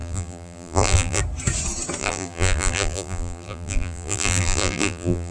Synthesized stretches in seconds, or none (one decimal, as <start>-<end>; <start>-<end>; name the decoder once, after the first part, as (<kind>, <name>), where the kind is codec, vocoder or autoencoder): 0.0-1.2 (vocoder, BigVGAN v2); 2.0-5.3